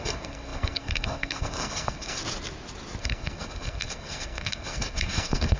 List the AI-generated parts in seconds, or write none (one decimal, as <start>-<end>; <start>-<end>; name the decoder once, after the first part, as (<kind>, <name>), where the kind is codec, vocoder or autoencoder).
0.0-2.2 (codec, SNAC); 3.0-5.6